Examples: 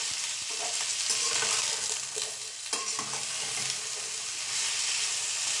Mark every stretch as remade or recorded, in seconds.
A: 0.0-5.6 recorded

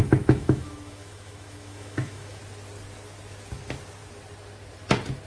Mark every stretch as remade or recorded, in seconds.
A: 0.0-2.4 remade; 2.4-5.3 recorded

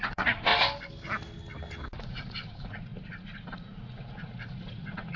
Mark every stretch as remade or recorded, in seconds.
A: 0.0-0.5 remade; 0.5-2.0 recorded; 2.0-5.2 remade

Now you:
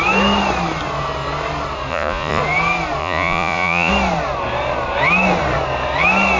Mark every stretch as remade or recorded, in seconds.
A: 0.0-1.9 recorded; 1.9-2.4 remade; 2.4-3.0 recorded; 3.0-3.9 remade; 3.9-6.4 recorded

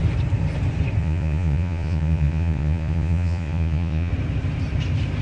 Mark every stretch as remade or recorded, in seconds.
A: 0.0-1.0 recorded; 1.0-4.1 remade; 4.1-5.2 recorded